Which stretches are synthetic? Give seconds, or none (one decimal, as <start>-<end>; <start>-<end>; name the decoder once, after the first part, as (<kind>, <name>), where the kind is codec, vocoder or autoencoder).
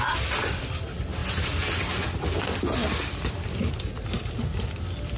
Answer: none